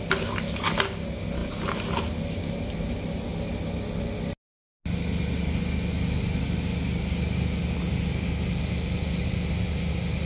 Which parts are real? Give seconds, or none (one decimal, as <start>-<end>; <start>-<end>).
0.0-10.3